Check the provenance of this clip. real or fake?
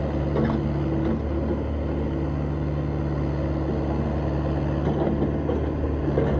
real